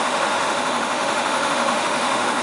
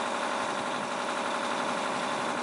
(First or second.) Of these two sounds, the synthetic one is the first